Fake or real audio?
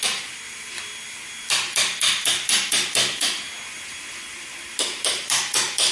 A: real